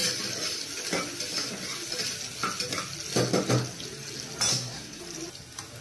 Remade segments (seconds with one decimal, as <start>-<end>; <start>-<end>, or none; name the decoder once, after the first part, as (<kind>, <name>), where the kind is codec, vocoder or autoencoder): 4.5-5.0 (codec, SNAC)